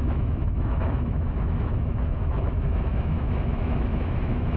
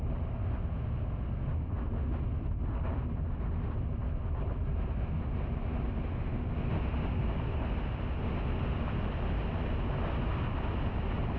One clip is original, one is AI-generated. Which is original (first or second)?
second